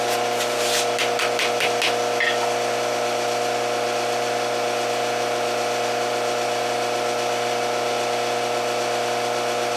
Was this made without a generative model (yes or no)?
yes